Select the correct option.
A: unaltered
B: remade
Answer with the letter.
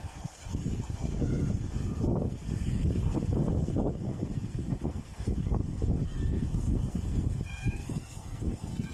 B